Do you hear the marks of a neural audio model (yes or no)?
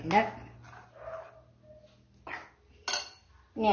no